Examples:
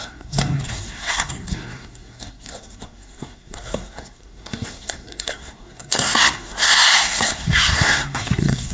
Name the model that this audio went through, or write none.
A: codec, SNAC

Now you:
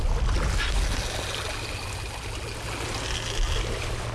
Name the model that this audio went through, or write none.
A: none